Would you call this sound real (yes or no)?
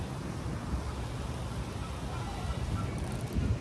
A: yes